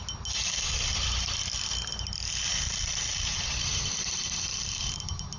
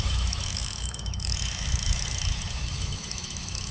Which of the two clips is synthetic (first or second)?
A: second